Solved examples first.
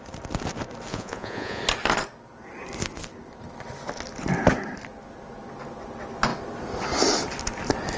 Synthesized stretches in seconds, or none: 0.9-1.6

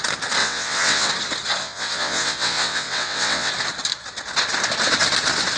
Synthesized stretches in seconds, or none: 0.4-1.1; 1.6-3.5

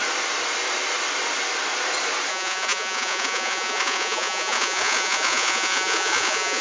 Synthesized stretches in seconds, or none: 2.3-6.6

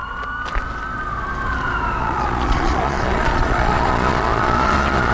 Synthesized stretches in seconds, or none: 2.0-5.1

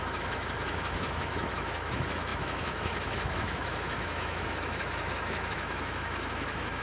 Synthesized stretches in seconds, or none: 0.0-6.8